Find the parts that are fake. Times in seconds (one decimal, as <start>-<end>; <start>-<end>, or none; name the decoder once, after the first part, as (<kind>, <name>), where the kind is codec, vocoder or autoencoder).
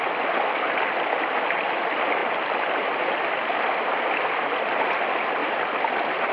none